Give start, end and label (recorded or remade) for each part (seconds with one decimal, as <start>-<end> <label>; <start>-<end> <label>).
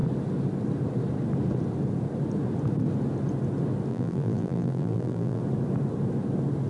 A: 0.0-3.9 recorded; 3.9-5.4 remade; 5.4-6.7 recorded